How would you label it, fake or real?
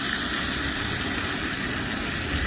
real